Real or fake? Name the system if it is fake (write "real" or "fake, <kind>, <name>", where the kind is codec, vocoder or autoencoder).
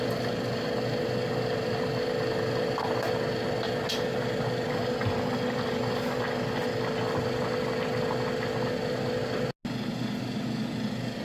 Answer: real